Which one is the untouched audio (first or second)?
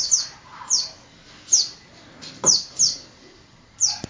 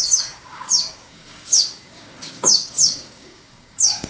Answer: first